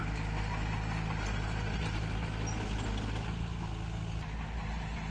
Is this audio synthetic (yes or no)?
no